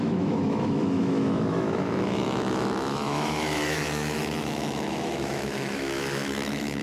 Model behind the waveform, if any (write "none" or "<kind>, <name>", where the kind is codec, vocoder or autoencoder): autoencoder, DAC-VAE